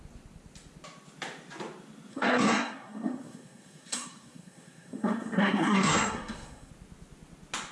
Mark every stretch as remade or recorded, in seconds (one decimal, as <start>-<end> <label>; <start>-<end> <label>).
0.0-2.1 recorded; 2.1-6.7 remade; 6.7-7.7 recorded